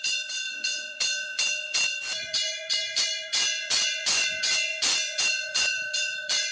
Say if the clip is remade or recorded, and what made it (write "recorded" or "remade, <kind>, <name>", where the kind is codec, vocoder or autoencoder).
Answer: remade, vocoder, Vocos